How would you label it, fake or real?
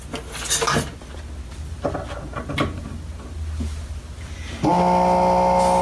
real